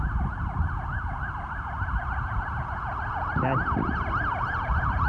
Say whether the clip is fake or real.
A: real